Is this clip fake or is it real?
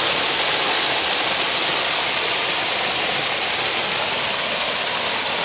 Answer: real